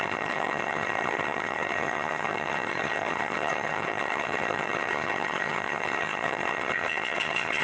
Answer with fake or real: fake